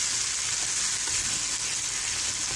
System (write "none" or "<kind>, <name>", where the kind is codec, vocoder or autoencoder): none